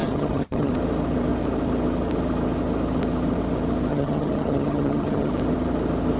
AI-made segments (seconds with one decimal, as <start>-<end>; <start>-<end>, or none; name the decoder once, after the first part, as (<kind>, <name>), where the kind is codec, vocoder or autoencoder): 0.0-0.7 (vocoder, HiFi-GAN); 3.9-5.3

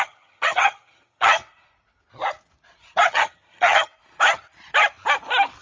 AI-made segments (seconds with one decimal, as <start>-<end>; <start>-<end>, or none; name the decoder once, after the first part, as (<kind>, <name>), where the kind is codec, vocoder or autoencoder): 0.0-1.4 (vocoder, HiFi-GAN); 3.1-3.9

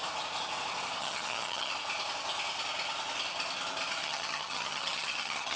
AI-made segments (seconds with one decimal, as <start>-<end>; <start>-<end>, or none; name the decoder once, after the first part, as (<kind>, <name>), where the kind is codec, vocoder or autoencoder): 1.0-1.7 (vocoder, HiFi-GAN); 4.0-5.6

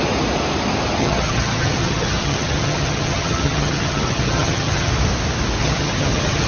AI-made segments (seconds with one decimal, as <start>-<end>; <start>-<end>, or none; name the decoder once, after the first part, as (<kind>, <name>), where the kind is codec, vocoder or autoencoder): 1.0-4.9 (vocoder, HiFi-GAN); 5.6-6.5

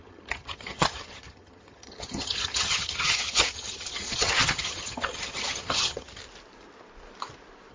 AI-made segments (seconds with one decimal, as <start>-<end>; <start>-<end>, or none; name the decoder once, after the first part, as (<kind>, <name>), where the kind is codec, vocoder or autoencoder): 0.0-6.2 (vocoder, HiFi-GAN)

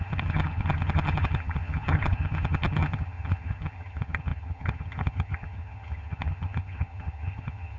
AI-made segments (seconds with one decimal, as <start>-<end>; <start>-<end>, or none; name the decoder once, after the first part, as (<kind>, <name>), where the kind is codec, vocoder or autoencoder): 0.0-7.8 (vocoder, HiFi-GAN)